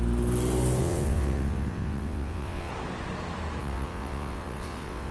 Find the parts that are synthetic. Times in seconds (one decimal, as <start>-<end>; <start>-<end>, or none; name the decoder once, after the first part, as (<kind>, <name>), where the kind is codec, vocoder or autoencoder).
0.8-2.7 (vocoder, WaveNeXt); 3.6-5.1

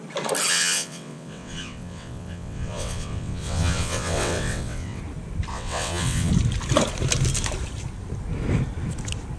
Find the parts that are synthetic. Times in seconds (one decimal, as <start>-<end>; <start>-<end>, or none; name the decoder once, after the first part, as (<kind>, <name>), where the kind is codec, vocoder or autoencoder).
0.5-5.0 (vocoder, WaveNeXt); 5.5-6.3

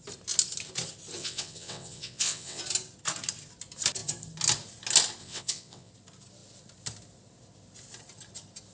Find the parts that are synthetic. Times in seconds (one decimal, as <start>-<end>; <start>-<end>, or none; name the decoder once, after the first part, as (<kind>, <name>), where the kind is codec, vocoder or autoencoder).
1.2-2.6 (vocoder, WaveNeXt); 5.2-5.9

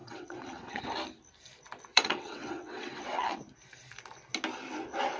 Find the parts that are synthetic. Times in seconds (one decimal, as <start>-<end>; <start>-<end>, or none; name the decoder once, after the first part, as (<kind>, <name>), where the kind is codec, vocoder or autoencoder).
0.0-0.8 (vocoder, WaveNeXt); 1.9-3.4

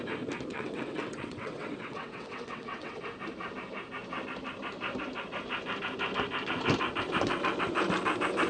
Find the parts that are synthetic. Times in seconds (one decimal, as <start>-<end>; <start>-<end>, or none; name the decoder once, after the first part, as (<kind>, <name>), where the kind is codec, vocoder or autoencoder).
0.5-3.0 (vocoder, WaveNeXt)

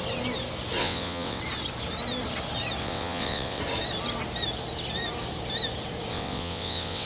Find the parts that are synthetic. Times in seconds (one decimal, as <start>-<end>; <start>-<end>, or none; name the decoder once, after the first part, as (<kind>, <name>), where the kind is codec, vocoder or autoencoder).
0.8-1.4 (vocoder, WaveNeXt); 2.8-3.6; 6.1-7.1

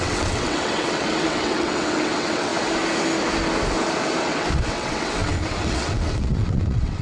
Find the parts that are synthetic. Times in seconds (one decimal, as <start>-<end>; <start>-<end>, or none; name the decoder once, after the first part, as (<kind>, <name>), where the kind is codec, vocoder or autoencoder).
0.0-2.5 (vocoder, WaveNeXt); 4.2-7.0